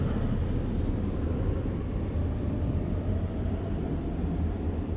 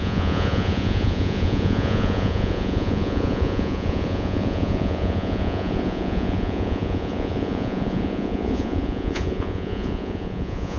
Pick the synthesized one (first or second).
second